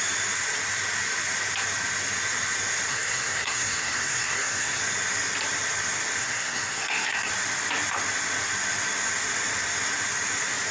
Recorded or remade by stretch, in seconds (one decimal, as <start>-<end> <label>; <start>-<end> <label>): 0.0-2.9 recorded; 2.9-4.8 remade; 4.8-6.2 recorded; 6.2-7.3 remade; 7.3-10.7 recorded